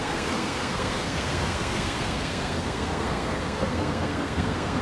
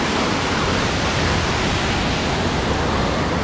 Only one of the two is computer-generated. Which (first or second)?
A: first